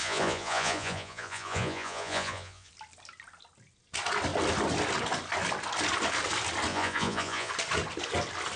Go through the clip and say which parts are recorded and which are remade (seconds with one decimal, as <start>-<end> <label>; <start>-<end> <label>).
0.0-2.7 remade; 2.7-6.7 recorded; 6.7-7.5 remade; 7.5-8.6 recorded